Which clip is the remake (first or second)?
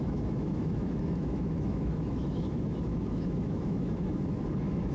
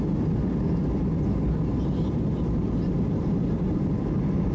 first